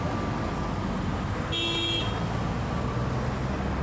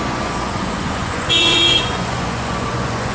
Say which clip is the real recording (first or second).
first